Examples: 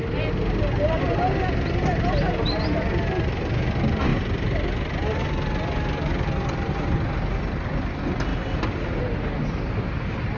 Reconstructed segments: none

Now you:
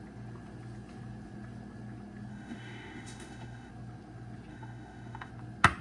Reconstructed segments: 2.3-3.7 (autoencoder, DAC-VAE); 4.5-5.3

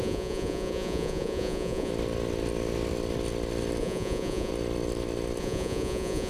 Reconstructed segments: 0.0-1.9 (vocoder, Vocos); 3.8-4.5; 5.4-6.3

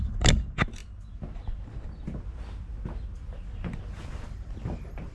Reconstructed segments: none

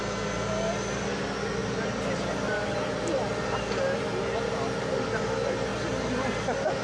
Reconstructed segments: none

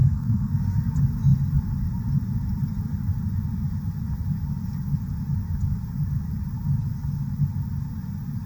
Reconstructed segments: 0.0-0.6 (codec, SNAC)

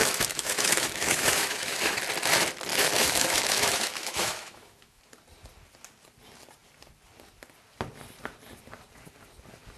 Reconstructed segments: 0.0-2.0 (autoencoder, DAC-VAE); 2.7-5.0

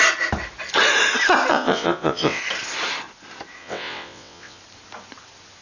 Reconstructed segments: 1.5-2.4 (vocoder, WaveNeXt); 3.6-4.6